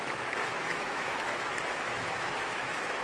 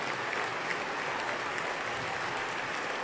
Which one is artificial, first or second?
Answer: first